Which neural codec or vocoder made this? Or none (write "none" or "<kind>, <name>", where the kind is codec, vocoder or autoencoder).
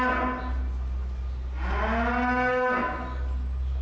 none